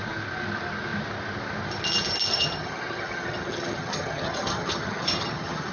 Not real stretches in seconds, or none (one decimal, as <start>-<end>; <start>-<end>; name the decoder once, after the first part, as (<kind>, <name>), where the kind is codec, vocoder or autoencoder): 2.3-5.7 (vocoder, HiFi-GAN)